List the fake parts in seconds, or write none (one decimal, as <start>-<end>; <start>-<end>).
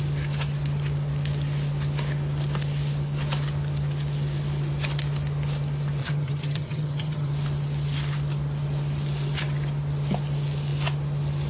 6.0-7.3